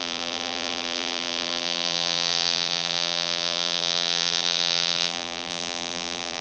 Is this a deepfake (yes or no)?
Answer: yes